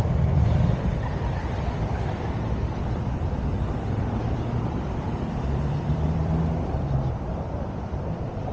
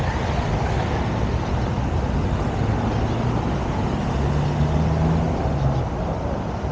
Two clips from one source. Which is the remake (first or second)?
first